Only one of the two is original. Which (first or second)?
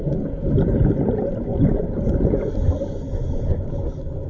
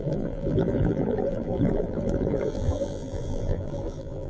first